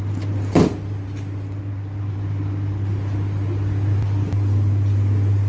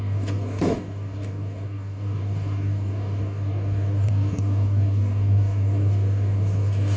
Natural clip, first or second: first